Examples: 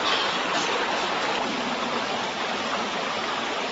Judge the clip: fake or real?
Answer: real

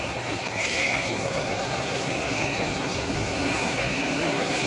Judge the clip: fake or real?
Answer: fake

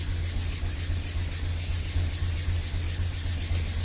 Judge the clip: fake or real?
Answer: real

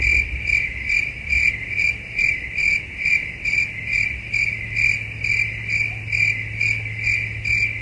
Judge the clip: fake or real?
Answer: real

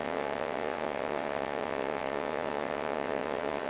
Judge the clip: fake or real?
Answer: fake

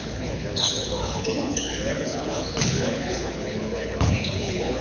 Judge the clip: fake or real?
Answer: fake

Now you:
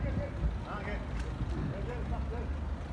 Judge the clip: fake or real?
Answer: real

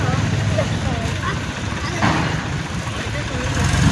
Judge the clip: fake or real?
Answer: real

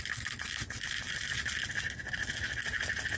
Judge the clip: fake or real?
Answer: real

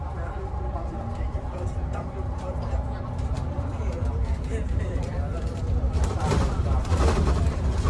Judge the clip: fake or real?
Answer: fake